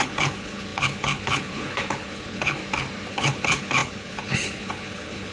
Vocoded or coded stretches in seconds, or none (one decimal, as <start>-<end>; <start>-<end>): 0.0-2.6; 3.1-5.3

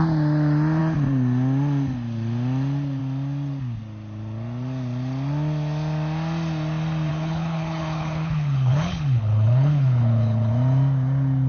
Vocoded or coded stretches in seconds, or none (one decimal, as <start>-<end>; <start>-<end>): 7.1-10.5

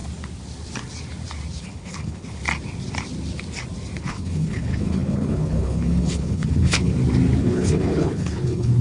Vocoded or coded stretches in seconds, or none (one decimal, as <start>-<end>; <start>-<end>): 1.6-2.4; 4.0-6.9; 7.4-8.8

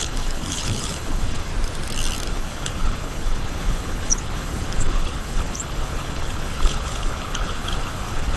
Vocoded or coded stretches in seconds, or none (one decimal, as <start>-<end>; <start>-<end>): 0.0-1.5; 2.3-8.4

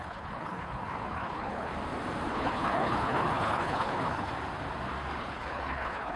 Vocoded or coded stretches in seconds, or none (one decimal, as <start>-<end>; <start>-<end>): 0.0-1.7; 2.3-4.3; 5.2-6.2

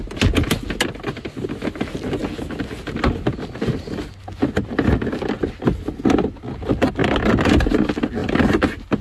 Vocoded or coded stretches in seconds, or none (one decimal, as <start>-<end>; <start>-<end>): none

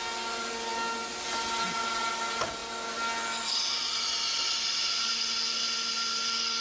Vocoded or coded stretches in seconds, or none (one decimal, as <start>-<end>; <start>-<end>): none

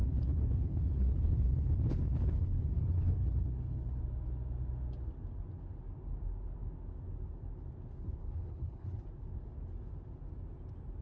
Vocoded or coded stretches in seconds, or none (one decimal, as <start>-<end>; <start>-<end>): 0.0-4.0; 8.2-9.0